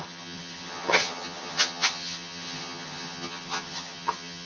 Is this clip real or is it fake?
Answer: fake